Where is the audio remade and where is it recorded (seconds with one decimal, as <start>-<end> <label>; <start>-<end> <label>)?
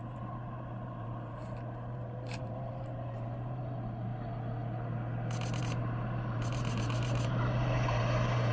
0.0-4.1 remade; 4.1-5.6 recorded; 5.6-8.5 remade